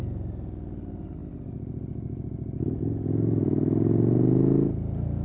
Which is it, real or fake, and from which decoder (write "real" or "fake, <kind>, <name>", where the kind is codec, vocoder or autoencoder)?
real